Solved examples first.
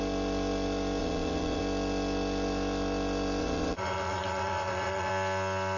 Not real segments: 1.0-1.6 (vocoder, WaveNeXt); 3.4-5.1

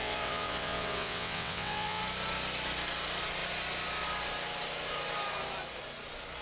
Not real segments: 0.0-2.0 (vocoder, WaveNeXt)

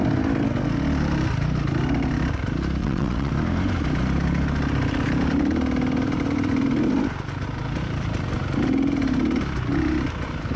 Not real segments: 2.8-3.3 (vocoder, WaveNeXt)

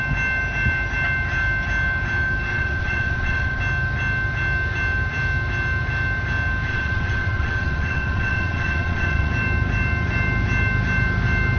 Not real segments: 2.5-3.6 (vocoder, WaveNeXt); 6.7-9.3

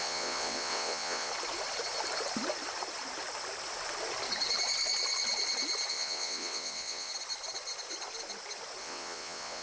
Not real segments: 0.0-1.3 (vocoder, WaveNeXt); 5.9-7.1; 8.8-9.6